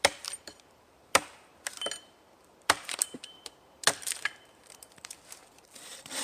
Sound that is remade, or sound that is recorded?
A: remade